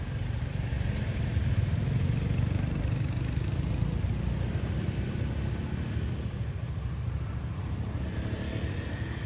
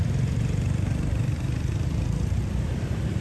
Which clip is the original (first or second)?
first